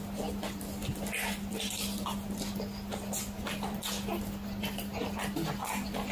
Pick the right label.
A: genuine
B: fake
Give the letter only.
A